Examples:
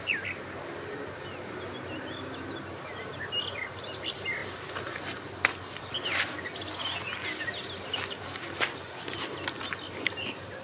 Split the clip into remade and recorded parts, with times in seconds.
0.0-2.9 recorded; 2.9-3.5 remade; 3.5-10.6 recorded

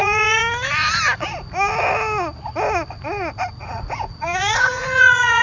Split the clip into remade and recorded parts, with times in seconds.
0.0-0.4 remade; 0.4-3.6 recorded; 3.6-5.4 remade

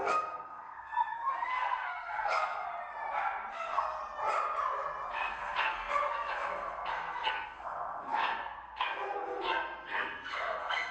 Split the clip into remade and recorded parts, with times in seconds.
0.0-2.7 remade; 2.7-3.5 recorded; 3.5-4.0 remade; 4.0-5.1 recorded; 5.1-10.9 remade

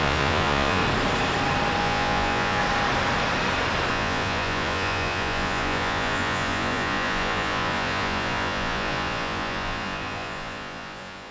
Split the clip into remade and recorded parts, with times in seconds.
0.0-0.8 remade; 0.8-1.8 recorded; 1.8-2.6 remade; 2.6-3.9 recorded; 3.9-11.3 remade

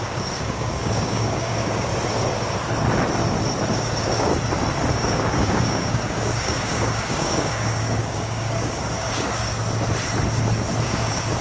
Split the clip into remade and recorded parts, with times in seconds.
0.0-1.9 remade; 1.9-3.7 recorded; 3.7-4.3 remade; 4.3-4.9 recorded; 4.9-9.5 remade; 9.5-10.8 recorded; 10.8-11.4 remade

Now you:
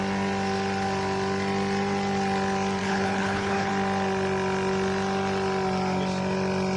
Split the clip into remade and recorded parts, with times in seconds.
0.0-2.8 recorded; 2.8-3.7 remade; 3.7-6.8 recorded